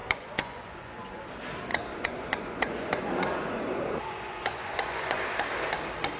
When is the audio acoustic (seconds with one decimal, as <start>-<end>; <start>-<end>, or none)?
1.2-1.7; 5.2-6.2